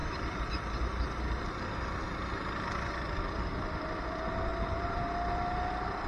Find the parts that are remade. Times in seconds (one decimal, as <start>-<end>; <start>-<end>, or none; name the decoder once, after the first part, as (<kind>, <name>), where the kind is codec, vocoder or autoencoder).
0.0-1.1 (vocoder, BigVGAN v2); 4.5-5.0